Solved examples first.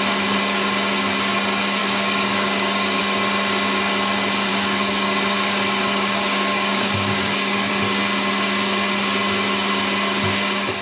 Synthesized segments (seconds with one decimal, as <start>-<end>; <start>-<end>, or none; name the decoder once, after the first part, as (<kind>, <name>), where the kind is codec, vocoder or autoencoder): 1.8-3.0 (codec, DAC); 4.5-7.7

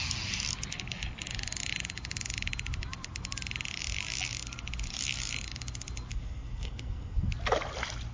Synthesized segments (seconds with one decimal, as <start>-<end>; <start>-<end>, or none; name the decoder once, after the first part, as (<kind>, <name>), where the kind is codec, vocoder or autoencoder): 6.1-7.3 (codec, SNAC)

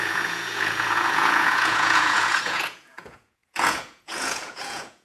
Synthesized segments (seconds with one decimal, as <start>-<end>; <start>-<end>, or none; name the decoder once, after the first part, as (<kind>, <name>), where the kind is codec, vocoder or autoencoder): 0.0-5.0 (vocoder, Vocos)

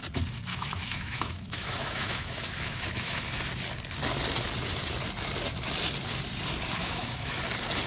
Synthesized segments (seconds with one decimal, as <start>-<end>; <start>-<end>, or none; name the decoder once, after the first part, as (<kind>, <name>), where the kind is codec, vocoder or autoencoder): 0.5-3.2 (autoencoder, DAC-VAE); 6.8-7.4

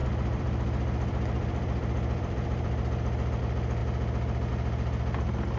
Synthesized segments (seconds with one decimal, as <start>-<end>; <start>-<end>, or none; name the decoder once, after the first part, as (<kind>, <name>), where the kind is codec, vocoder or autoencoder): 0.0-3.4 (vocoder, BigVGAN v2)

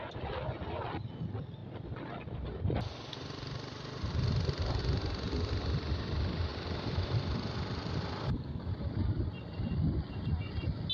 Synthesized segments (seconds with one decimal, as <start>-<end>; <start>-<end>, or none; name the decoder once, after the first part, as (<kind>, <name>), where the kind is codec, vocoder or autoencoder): 1.6-4.8 (vocoder, BigVGAN v2); 6.5-9.2

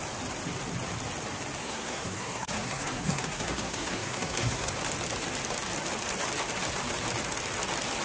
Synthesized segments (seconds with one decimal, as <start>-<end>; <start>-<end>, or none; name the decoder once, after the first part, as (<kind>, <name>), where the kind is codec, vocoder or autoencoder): 1.6-4.7 (codec, SNAC)

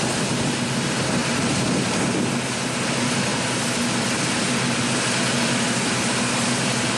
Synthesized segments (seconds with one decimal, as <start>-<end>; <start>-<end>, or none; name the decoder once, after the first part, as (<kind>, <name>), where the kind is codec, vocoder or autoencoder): none